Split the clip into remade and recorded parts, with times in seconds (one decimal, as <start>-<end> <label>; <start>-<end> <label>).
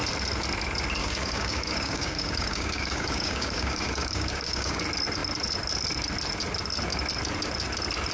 0.0-1.0 recorded; 1.0-4.8 remade; 4.8-8.1 recorded